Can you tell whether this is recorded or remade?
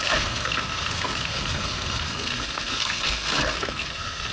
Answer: remade